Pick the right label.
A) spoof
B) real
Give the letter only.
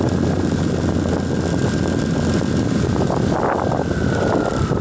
B